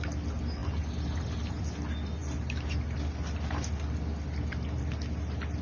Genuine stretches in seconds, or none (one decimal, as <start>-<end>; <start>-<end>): 0.0-5.6